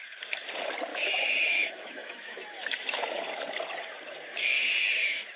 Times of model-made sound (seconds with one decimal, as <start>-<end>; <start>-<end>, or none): 0.9-3.3; 4.3-4.9